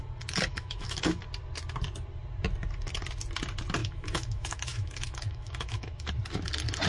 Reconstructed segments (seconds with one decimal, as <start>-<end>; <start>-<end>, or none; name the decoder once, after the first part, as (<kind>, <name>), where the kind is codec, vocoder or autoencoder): 0.5-1.2 (autoencoder, DAC-VAE); 3.8-6.1